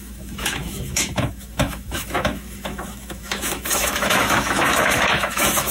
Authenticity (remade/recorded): remade